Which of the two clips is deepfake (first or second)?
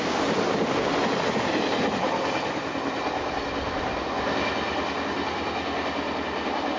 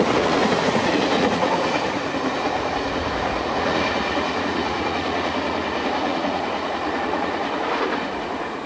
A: second